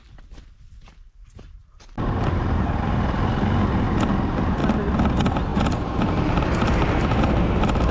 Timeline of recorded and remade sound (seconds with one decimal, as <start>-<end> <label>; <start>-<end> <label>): 0.0-7.9 recorded